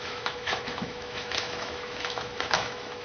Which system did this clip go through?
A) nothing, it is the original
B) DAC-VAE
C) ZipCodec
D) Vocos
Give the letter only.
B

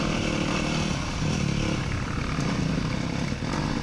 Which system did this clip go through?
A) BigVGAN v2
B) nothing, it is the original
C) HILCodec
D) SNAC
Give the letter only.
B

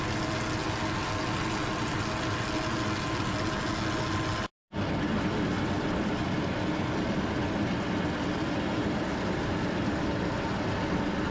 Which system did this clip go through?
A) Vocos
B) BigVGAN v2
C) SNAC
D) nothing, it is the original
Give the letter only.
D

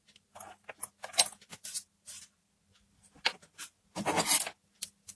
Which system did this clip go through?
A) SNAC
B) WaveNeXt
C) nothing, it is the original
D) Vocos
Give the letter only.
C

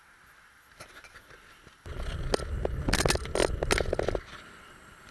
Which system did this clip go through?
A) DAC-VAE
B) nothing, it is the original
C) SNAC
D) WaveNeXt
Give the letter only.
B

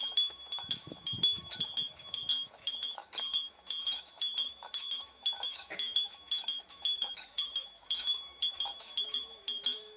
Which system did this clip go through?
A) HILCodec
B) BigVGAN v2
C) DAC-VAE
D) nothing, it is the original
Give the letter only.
C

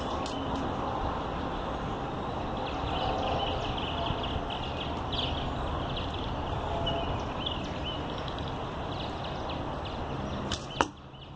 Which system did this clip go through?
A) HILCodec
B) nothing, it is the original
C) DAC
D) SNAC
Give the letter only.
B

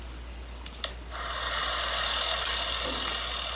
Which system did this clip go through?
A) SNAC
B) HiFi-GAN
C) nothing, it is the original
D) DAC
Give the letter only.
C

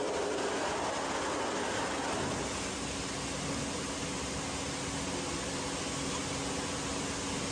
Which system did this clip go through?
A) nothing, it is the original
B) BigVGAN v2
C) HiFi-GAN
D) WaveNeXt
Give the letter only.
A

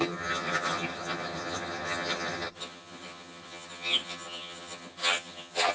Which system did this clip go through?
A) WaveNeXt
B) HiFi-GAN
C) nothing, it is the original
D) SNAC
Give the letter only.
B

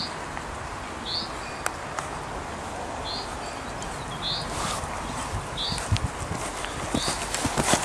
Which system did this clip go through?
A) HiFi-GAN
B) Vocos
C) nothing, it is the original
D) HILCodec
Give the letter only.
C